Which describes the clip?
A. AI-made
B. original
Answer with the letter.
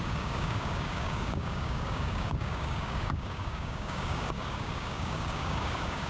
A